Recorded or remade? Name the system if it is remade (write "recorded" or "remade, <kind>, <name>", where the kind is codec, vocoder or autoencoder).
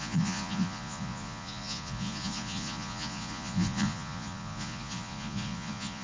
remade, vocoder, Vocos